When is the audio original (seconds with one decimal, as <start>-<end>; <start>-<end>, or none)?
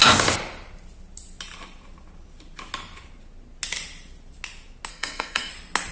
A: 0.0-4.9; 5.5-5.9